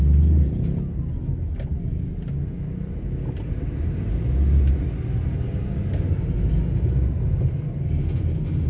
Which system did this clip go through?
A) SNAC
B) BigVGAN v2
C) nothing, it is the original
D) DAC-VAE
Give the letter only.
C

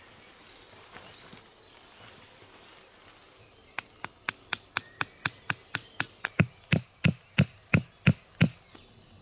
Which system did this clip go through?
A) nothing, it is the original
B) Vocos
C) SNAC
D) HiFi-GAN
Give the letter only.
A